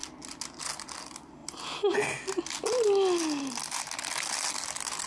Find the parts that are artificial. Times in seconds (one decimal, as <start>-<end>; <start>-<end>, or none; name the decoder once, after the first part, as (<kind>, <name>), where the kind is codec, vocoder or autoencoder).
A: none